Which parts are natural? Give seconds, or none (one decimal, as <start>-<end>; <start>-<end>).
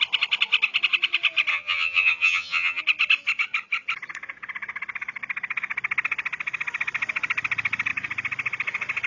0.0-1.5; 2.8-9.1